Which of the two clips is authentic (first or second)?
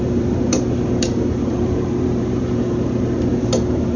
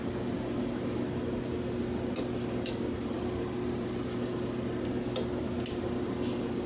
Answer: second